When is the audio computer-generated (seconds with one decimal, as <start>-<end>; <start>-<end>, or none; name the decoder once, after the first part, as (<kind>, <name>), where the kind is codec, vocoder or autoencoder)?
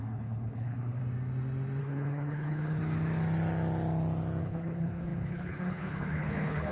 0.0-1.0 (codec, HILCodec); 1.8-2.8; 4.4-6.7